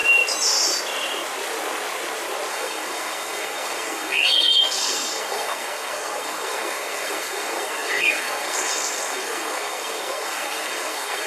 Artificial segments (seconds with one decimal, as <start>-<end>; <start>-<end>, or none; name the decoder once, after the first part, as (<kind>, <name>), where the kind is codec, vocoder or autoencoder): 2.5-11.3 (codec, SNAC)